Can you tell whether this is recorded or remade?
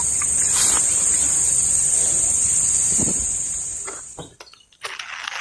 recorded